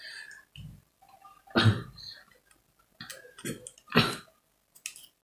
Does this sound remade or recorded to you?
recorded